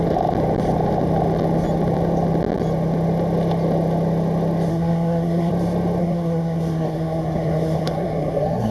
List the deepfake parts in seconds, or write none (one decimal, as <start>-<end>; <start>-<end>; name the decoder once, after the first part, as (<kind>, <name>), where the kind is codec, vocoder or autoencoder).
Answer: 4.7-5.5 (codec, SNAC); 6.0-8.7

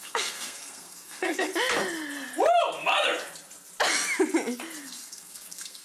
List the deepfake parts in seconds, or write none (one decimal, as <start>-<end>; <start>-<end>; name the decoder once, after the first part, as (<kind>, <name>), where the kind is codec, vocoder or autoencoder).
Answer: 0.0-1.5 (codec, SNAC); 4.8-5.8

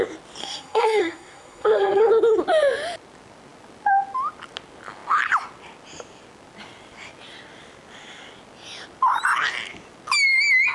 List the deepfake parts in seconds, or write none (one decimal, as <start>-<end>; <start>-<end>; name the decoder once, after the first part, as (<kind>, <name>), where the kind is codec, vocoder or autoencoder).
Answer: 0.4-2.1 (codec, SNAC)